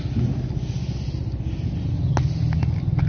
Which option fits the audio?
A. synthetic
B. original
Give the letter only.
B